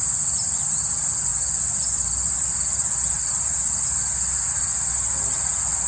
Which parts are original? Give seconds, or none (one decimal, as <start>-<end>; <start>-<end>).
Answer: 0.0-5.9